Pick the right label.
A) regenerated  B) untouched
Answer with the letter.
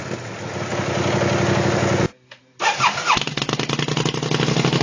B